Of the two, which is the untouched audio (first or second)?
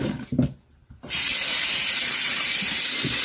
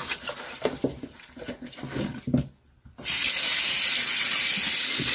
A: second